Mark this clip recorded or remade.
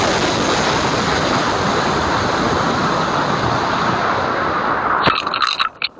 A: recorded